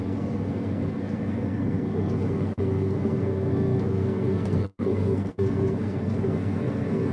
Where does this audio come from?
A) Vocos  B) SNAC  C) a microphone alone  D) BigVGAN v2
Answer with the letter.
B